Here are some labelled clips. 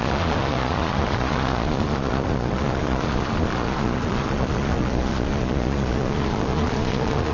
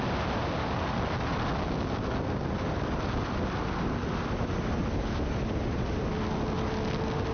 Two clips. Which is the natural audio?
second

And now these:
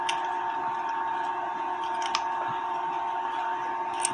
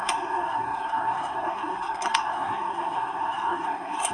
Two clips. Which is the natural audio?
first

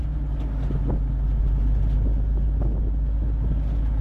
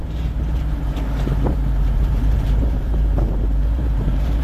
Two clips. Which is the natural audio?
first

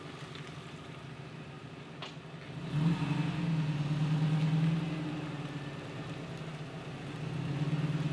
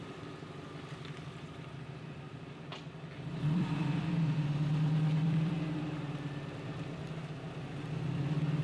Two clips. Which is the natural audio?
first